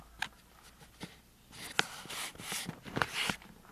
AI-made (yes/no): no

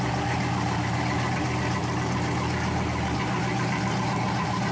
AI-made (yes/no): no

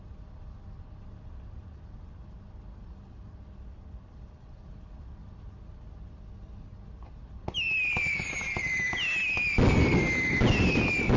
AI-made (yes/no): no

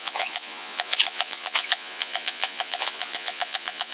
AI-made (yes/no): yes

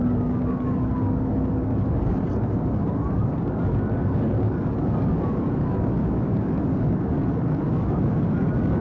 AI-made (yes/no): yes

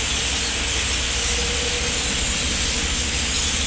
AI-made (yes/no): no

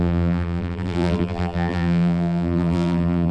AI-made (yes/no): yes